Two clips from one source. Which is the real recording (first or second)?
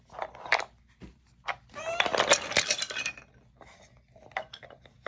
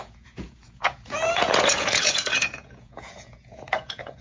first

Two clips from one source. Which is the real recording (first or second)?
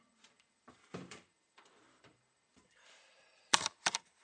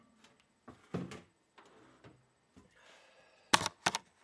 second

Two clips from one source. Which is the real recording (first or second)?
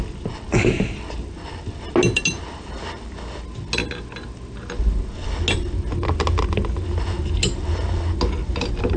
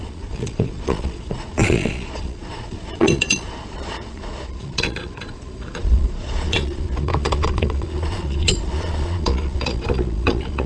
first